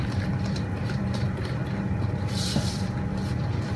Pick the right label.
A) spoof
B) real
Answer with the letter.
A